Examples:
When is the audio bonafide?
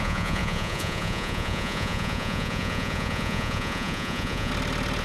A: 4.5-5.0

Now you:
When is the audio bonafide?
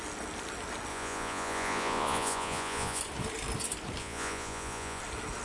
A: 0.0-0.9; 3.0-4.0; 5.0-5.4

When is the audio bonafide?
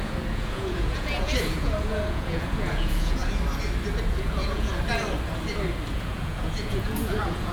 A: 3.2-4.1; 4.7-5.9